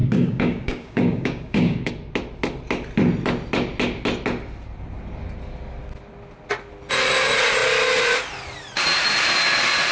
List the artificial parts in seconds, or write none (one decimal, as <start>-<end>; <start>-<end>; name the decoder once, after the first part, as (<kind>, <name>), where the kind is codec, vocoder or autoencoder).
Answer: 0.0-1.9 (codec, DAC)